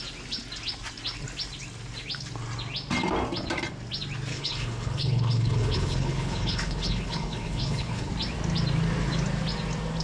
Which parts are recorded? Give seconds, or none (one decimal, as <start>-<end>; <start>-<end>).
0.0-4.3; 8.1-10.0